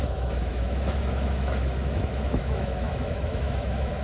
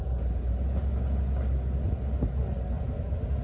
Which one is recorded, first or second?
second